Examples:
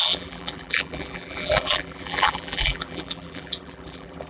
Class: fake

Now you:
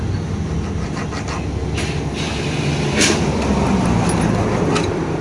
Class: real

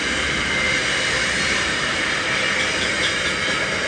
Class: real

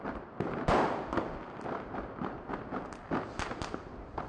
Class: real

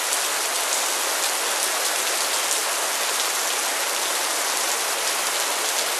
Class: real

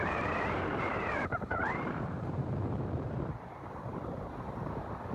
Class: fake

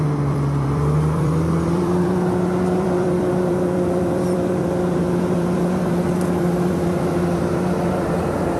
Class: fake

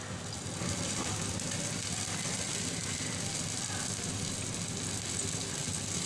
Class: real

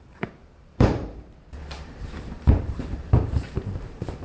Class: fake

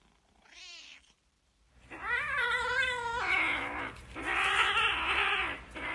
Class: fake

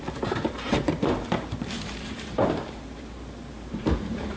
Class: fake